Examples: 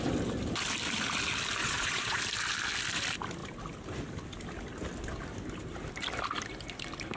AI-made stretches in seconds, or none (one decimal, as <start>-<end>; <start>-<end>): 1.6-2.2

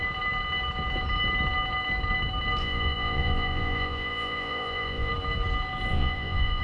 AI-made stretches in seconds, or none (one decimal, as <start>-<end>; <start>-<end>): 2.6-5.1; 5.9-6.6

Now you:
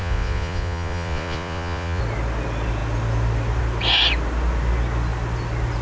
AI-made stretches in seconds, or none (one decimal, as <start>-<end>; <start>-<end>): 0.0-2.0

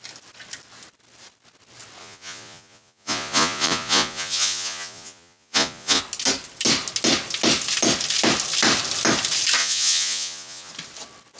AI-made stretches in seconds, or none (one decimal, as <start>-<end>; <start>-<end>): 2.0-6.0; 9.6-10.7